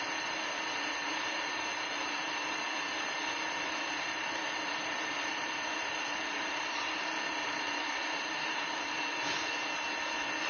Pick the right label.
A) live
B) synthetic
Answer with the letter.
A